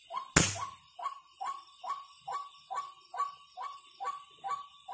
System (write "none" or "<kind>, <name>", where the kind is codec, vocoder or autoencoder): none